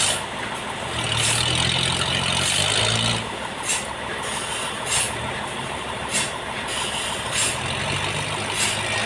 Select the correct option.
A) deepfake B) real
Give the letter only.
B